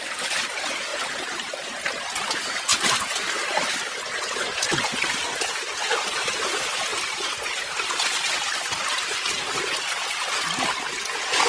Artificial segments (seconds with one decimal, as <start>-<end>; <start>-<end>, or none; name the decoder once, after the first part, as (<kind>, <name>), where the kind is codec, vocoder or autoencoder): 0.9-2.2 (vocoder, BigVGAN v2)